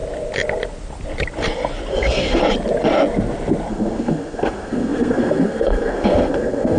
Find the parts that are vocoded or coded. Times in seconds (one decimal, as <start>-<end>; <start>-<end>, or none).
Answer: 1.9-2.4; 3.7-6.8